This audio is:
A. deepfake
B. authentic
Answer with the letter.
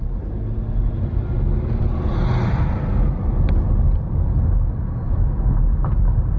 B